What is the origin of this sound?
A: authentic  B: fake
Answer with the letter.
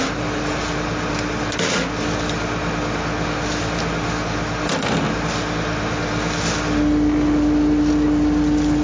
A